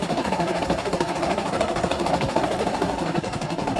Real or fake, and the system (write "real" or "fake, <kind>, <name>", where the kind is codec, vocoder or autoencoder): fake, codec, SNAC